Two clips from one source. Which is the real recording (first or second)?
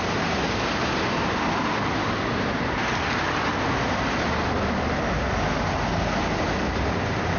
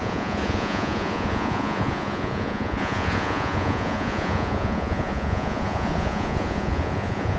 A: first